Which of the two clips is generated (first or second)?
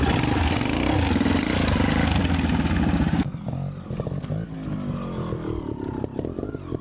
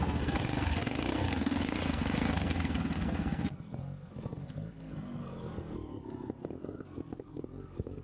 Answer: second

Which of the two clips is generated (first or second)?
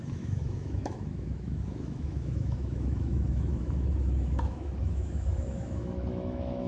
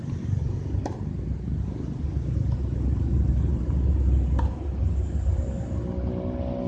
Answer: first